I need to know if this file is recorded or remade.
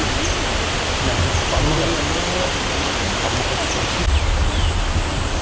recorded